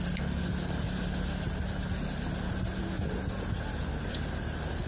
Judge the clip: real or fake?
real